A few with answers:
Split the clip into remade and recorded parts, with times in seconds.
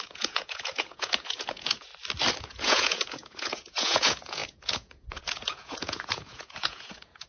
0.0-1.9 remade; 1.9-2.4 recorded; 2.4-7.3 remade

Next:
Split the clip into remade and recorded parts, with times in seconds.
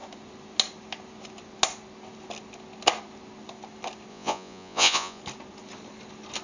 0.0-4.1 recorded; 4.1-5.2 remade; 5.2-6.4 recorded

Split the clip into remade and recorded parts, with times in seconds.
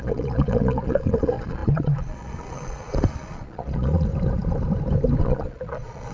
0.0-4.1 remade; 4.1-5.2 recorded; 5.2-6.1 remade